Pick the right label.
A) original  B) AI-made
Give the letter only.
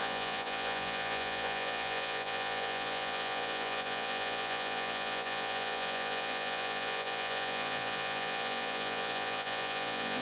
B